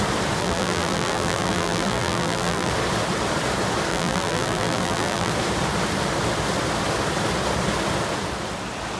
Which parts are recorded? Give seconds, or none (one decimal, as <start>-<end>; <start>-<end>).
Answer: 0.0-0.4; 2.7-3.9; 5.3-9.0